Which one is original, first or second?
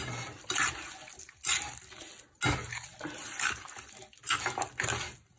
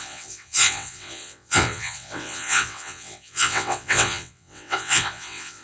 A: first